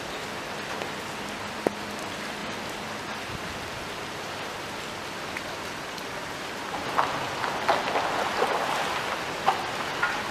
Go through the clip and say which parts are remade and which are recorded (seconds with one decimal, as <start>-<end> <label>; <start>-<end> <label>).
0.0-10.3 recorded